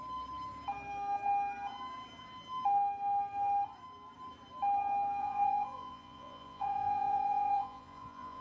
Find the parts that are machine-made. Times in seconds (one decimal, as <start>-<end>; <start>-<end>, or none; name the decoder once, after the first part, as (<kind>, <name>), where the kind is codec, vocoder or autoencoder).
5.2-8.4 (vocoder, Vocos)